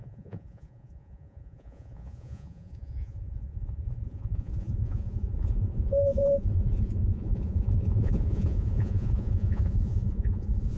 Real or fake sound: fake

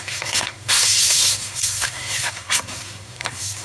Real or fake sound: fake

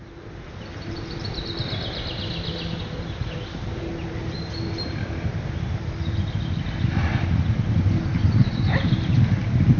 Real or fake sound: real